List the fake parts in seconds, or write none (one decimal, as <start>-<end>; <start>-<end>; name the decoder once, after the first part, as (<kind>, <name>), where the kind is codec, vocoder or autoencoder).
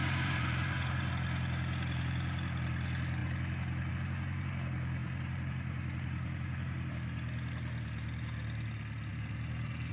0.0-1.1 (vocoder, BigVGAN v2); 5.0-6.9; 9.1-9.9